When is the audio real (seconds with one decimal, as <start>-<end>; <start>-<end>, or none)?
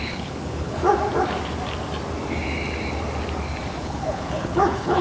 0.8-3.8